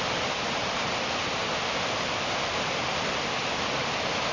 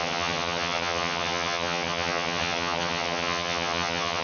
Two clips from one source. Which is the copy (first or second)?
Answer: second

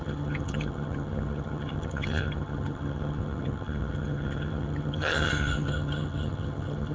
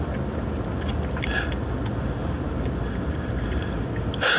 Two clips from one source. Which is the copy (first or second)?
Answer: first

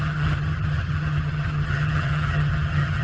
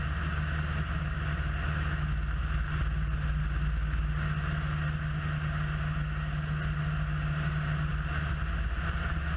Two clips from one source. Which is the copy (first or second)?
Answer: first